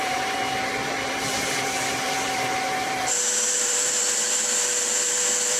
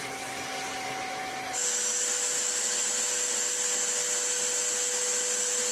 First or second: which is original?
second